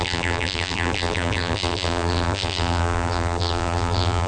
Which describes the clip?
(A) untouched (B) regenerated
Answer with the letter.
B